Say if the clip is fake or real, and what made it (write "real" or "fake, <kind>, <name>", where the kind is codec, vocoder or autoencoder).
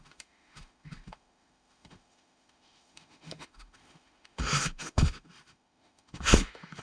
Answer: fake, autoencoder, DAC-VAE